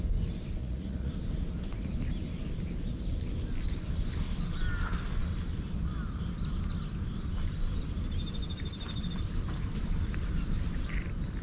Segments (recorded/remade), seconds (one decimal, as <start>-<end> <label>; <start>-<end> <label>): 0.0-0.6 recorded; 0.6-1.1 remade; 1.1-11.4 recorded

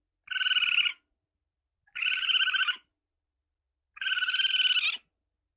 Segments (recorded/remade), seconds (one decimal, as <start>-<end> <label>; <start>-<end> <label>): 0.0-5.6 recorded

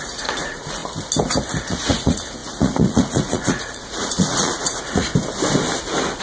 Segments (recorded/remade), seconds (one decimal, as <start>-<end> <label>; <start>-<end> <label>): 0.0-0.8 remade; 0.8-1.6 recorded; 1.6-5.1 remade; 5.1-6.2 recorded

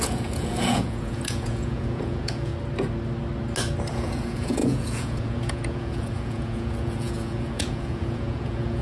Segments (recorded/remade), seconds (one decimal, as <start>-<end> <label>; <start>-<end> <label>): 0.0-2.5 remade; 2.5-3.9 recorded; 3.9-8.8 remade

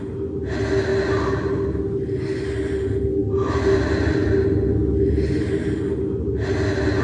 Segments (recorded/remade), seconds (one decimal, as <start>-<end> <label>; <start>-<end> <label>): 0.0-7.0 recorded